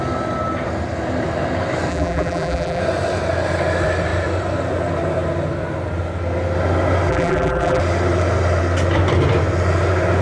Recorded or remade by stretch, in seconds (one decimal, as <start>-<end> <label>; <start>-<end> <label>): 0.0-1.9 recorded; 1.9-2.8 remade; 2.8-7.1 recorded; 7.1-7.8 remade; 7.8-10.2 recorded

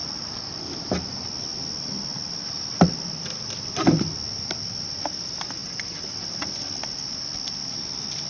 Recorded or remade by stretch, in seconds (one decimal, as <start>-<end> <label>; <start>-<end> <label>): 0.0-0.8 remade; 0.8-8.3 recorded

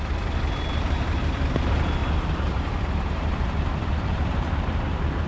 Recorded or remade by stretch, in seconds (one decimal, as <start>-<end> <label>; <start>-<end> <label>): 0.0-2.0 recorded; 2.0-5.3 remade